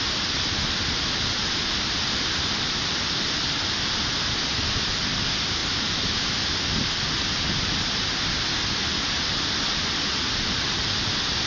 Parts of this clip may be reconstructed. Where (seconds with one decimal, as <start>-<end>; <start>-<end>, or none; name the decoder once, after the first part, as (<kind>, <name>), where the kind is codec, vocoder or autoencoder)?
5.6-6.4 (vocoder, BigVGAN v2)